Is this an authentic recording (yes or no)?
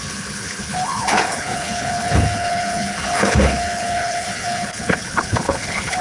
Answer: no